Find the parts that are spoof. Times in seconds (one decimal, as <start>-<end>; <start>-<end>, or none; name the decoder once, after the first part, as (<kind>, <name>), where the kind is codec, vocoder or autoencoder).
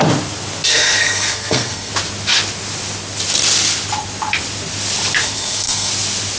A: 0.7-1.9 (codec, SNAC); 5.2-5.9